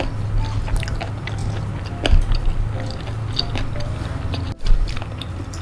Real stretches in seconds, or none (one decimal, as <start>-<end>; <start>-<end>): 0.0-5.6